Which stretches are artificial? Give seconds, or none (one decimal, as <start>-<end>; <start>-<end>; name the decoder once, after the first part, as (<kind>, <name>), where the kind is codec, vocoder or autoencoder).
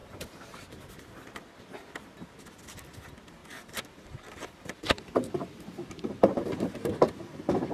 0.0-0.7 (vocoder, BigVGAN v2); 3.4-7.1